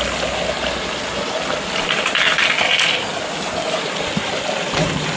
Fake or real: real